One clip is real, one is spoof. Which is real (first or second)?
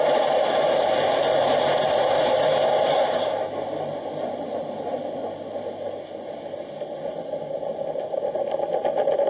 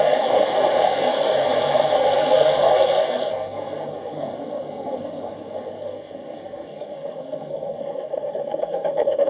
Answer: first